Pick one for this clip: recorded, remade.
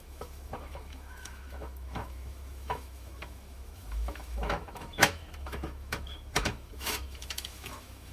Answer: remade